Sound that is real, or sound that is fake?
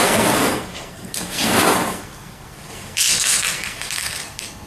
fake